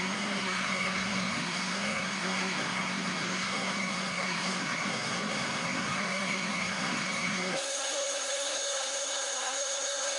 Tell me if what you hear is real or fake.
fake